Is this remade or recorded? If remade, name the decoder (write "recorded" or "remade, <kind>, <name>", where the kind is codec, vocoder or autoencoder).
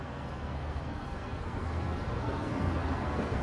remade, codec, SNAC